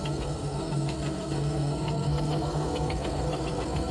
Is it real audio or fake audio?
fake